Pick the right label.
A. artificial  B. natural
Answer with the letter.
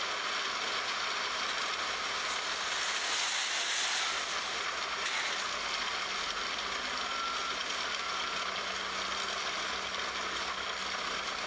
B